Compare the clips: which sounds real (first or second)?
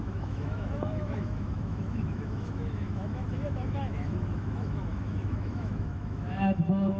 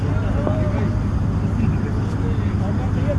second